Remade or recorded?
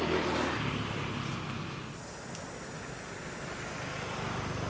recorded